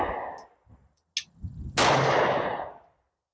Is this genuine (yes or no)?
yes